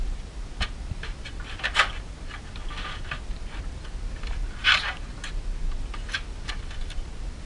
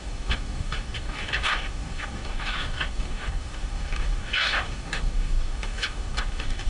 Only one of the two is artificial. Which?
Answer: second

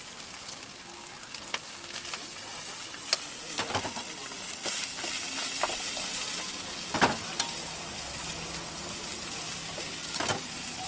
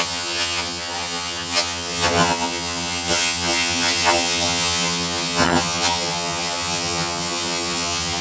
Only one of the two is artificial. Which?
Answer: second